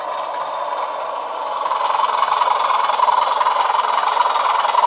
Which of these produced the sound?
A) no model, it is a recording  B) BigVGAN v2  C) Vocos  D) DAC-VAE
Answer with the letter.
A